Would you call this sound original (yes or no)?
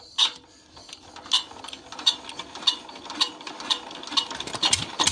yes